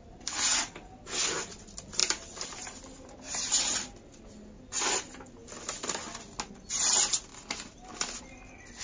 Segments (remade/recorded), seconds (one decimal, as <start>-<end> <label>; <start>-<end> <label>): 0.0-2.0 recorded; 2.0-3.1 remade; 3.1-7.3 recorded; 7.3-8.2 remade; 8.2-8.8 recorded

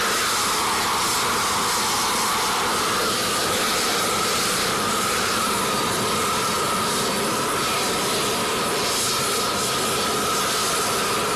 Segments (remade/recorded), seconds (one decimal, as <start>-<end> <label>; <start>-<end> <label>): 0.0-3.4 recorded; 3.4-5.9 remade; 5.9-11.4 recorded

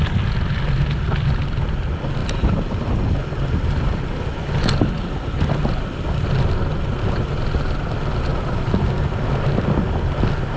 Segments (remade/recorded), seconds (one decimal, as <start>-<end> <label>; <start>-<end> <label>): 0.0-2.2 recorded; 2.2-4.0 remade; 4.0-8.3 recorded; 8.3-9.1 remade; 9.1-10.6 recorded

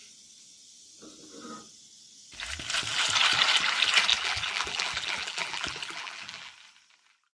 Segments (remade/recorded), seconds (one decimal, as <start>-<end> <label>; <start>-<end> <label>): 0.0-4.1 recorded; 4.1-6.5 remade; 6.5-7.4 recorded

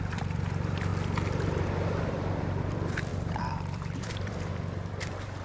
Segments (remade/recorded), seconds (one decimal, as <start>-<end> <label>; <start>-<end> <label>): 0.0-0.9 remade; 0.9-2.1 recorded; 2.1-5.4 remade